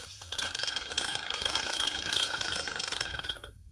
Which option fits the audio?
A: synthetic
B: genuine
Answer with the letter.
A